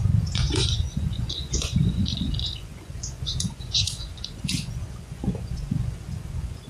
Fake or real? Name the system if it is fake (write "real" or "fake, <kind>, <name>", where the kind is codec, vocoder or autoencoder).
fake, vocoder, Vocos